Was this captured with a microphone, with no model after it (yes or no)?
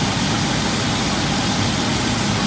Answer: yes